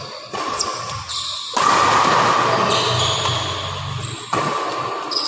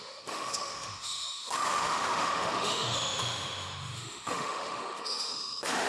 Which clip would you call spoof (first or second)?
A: second